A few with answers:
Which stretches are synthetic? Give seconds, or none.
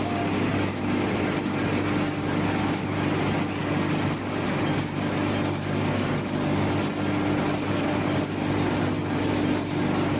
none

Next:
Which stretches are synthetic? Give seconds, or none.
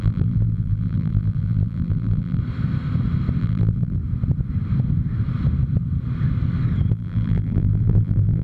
0.0-2.4; 3.4-4.0; 6.9-8.4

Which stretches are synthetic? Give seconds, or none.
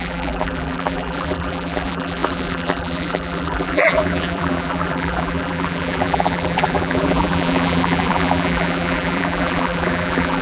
0.0-10.4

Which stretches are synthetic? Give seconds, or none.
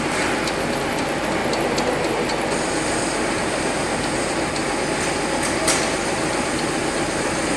0.0-1.4; 2.5-4.7; 5.7-7.6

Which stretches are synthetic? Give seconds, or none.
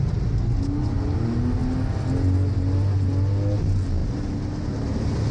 none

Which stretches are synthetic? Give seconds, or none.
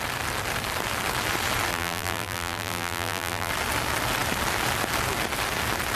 1.7-3.5